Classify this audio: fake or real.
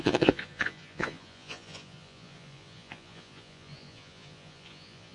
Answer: fake